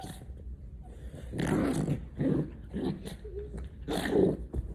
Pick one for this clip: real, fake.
real